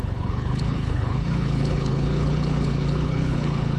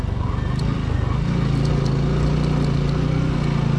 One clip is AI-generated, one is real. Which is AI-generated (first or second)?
first